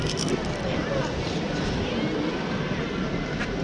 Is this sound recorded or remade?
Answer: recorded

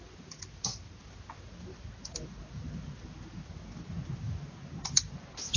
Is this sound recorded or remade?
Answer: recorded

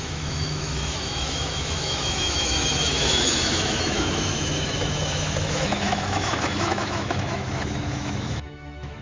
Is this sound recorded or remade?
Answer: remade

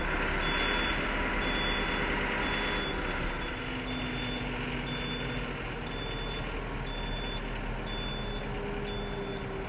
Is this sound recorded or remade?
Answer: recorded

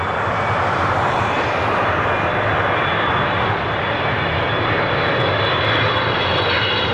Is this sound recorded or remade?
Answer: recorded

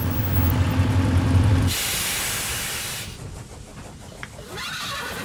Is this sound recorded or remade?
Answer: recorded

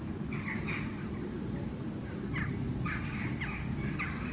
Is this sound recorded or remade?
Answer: recorded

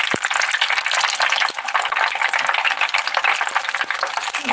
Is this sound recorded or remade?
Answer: recorded